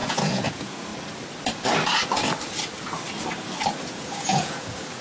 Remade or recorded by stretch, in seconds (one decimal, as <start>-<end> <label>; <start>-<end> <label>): 0.0-0.9 remade; 0.9-3.9 recorded; 3.9-5.0 remade